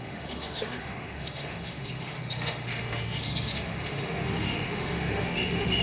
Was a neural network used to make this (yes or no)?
yes